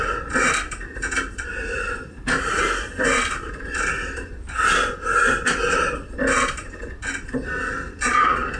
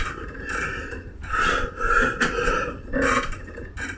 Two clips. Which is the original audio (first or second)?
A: first